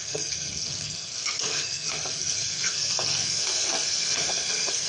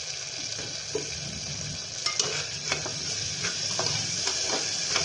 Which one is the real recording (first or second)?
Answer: second